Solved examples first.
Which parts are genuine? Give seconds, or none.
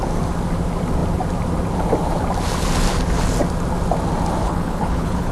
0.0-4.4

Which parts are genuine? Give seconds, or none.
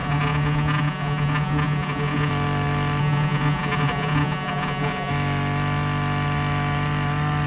2.3-3.0; 5.1-7.5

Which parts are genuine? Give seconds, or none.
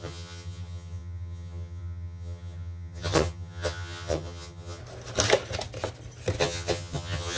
4.8-6.4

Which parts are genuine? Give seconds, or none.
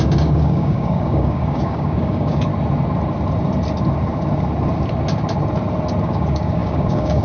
2.5-6.0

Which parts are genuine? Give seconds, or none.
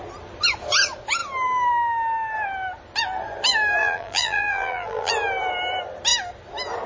0.0-3.8; 5.1-6.9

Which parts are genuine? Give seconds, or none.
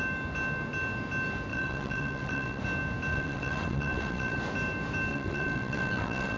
0.0-1.5; 2.6-3.1; 4.4-5.1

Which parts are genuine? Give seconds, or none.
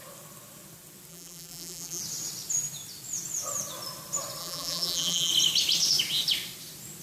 0.0-1.1; 2.0-4.4; 5.3-7.0